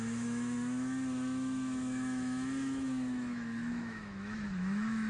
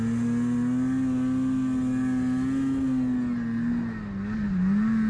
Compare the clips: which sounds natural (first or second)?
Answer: second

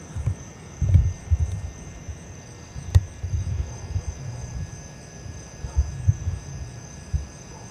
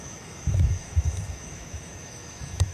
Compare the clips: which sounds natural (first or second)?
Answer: first